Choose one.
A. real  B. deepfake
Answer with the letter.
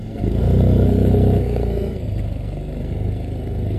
B